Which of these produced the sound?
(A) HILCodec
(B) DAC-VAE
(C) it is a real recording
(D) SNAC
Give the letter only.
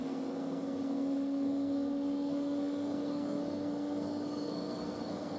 D